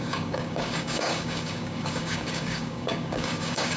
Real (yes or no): no